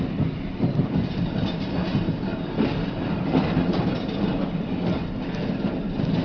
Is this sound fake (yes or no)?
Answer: no